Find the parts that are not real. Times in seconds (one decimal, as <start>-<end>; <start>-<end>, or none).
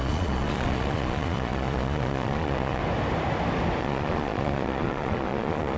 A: 0.0-2.8; 3.8-5.8